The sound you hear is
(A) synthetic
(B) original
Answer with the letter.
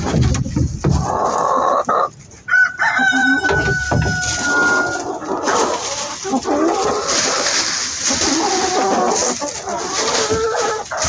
B